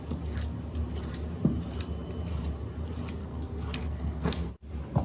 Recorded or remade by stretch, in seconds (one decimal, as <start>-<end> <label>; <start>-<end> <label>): 0.0-3.2 recorded; 3.2-4.5 remade; 4.5-5.0 recorded